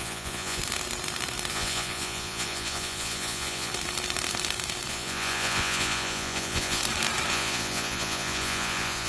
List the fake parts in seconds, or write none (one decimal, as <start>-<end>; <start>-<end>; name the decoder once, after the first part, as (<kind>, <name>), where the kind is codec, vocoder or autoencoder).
0.0-0.6 (vocoder, Vocos); 1.5-3.7; 4.9-6.8; 7.3-9.1